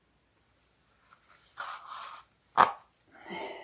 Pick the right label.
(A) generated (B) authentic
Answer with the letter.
B